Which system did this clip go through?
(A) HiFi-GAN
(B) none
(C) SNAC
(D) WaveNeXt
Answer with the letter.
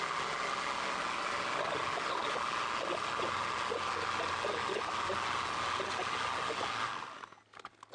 B